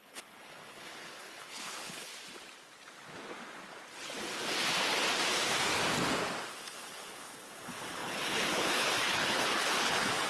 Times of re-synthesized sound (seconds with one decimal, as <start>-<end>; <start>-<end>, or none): 0.0-2.1; 6.5-10.3